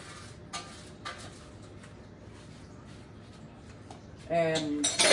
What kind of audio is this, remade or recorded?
recorded